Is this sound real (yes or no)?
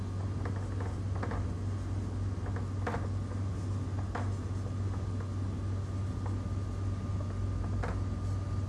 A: yes